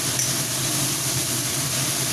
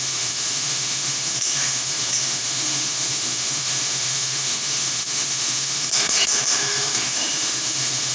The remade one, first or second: second